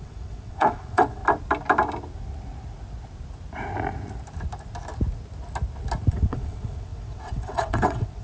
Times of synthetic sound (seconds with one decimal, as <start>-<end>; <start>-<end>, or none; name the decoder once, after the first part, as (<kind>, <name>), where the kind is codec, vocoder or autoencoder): 0.0-1.2 (vocoder, WaveNeXt); 6.1-8.2